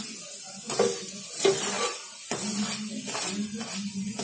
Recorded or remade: recorded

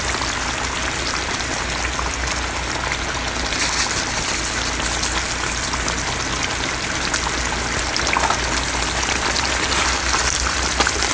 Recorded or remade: recorded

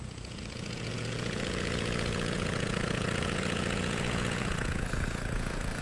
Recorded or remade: remade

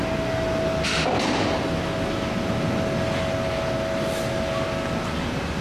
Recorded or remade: recorded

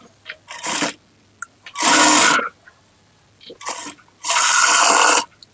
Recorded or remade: recorded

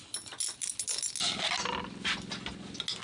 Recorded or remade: recorded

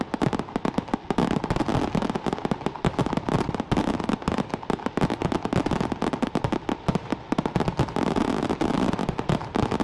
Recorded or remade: recorded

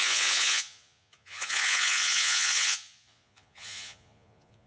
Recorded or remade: remade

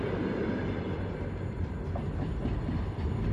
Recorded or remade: recorded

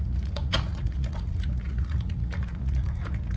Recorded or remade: remade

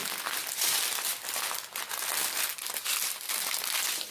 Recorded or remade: recorded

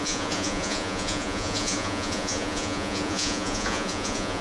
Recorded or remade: remade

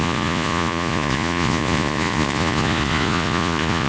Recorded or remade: remade